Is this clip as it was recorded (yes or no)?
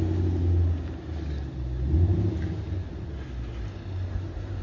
yes